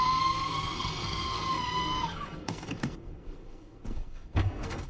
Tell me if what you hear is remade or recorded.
remade